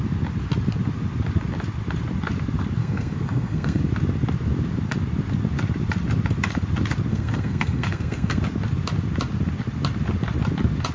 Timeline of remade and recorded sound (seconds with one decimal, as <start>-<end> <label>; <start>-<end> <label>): 0.0-2.8 recorded; 2.8-3.8 remade; 3.8-7.1 recorded; 7.1-8.4 remade; 8.4-10.9 recorded

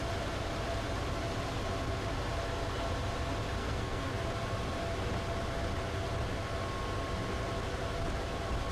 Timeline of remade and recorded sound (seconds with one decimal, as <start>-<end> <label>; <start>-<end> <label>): 0.0-3.6 recorded; 3.6-4.1 remade; 4.1-8.7 recorded

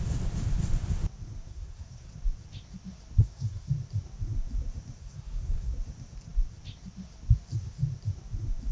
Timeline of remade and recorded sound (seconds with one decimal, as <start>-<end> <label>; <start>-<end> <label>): 0.0-1.5 recorded; 1.5-2.1 remade; 2.1-3.2 recorded; 3.2-3.7 remade; 3.7-5.0 recorded; 5.0-5.7 remade; 5.7-8.7 recorded

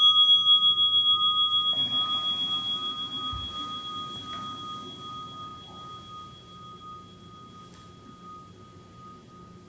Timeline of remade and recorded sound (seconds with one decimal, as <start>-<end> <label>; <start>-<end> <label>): 0.0-9.7 recorded

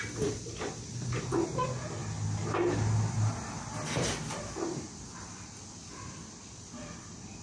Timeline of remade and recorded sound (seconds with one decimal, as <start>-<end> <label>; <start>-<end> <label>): 0.0-7.4 recorded

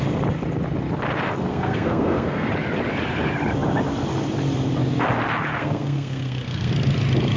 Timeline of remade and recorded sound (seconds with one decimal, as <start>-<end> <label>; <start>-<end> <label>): 0.0-1.5 recorded; 1.5-2.5 remade; 2.5-5.6 recorded; 5.6-6.7 remade; 6.7-7.4 recorded

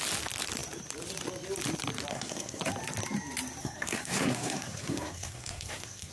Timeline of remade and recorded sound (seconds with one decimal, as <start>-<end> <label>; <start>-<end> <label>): 0.0-2.1 recorded; 2.1-2.6 remade; 2.6-3.6 recorded; 3.6-6.1 remade

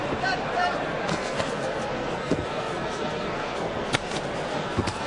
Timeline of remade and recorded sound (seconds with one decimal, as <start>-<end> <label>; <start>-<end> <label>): 0.0-1.0 recorded; 1.0-4.1 remade; 4.1-4.5 recorded; 4.5-5.1 remade